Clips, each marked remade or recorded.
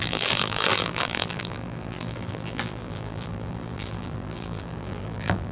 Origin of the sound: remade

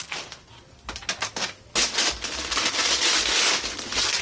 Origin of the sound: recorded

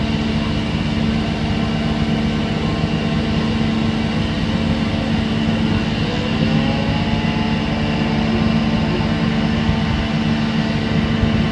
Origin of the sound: recorded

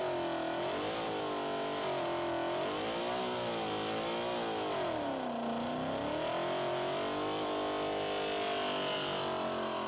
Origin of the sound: recorded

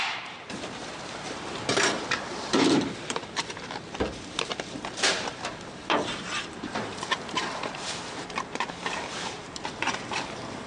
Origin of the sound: remade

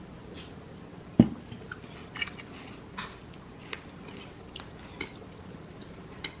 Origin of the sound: recorded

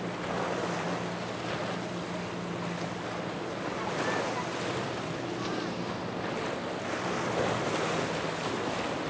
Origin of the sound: recorded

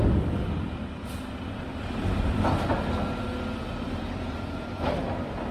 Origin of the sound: recorded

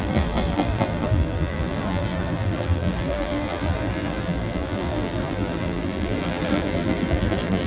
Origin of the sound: remade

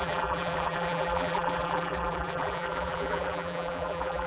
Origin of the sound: remade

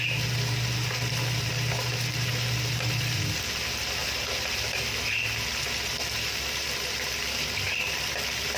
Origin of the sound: remade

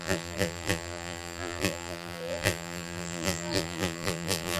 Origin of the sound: remade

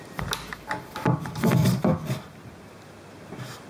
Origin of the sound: recorded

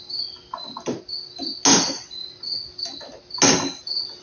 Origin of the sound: recorded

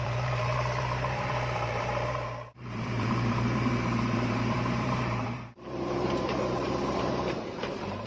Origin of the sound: remade